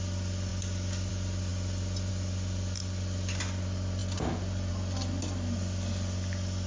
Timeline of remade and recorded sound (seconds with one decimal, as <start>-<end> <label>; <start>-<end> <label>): 0.0-6.7 recorded

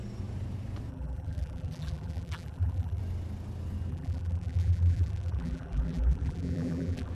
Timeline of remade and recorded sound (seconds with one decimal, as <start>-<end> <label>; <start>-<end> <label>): 0.0-0.9 recorded; 0.9-3.0 remade; 3.0-3.9 recorded; 3.9-7.1 remade

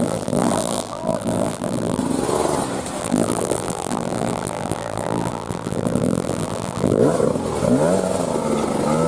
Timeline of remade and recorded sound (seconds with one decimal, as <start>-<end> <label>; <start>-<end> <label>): 0.0-2.0 remade; 2.0-3.0 recorded; 3.0-7.0 remade; 7.0-9.1 recorded

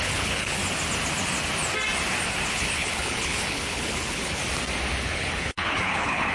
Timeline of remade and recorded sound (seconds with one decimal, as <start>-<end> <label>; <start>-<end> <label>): 0.0-0.6 remade; 0.6-2.5 recorded; 2.5-4.4 remade; 4.4-5.0 recorded; 5.0-6.3 remade

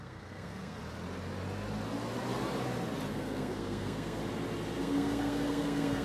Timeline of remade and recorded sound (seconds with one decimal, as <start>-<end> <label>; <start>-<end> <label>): 0.0-0.8 remade; 0.8-3.1 recorded; 3.1-4.2 remade; 4.2-4.8 recorded; 4.8-6.0 remade

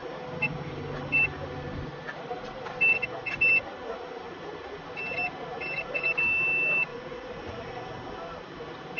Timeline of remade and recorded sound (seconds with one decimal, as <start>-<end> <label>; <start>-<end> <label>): 0.0-6.9 recorded; 6.9-7.4 remade; 7.4-9.0 recorded